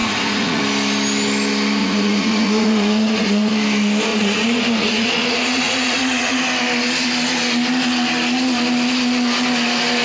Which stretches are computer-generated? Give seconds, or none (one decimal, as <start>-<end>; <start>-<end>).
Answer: 0.0-0.6; 1.8-3.5; 4.1-6.4